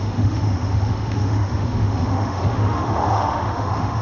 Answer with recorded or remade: remade